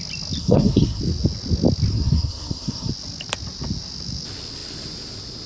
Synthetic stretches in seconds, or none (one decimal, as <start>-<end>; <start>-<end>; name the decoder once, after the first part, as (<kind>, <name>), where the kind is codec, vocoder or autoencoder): 0.4-1.0 (codec, SNAC); 1.9-2.9